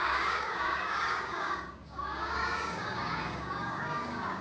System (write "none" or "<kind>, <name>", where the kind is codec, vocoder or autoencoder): codec, DAC